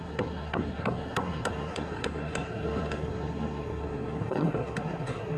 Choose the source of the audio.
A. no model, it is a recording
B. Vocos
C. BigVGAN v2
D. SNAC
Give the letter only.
D